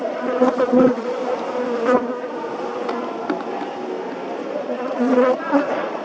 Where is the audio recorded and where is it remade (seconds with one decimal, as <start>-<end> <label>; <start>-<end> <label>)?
0.0-1.2 remade; 1.2-4.6 recorded; 4.6-6.0 remade